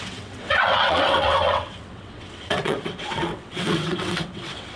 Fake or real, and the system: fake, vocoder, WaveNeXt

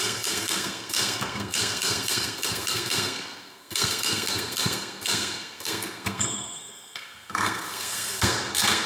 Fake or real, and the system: fake, codec, SNAC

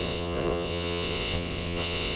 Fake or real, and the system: fake, vocoder, WaveNeXt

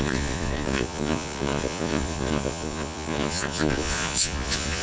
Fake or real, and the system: fake, vocoder, Vocos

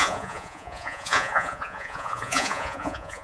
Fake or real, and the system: fake, vocoder, Vocos